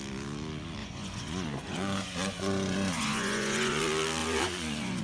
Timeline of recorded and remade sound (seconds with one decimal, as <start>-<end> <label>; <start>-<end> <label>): 0.0-0.8 recorded; 0.8-3.8 remade; 3.8-4.2 recorded; 4.2-5.0 remade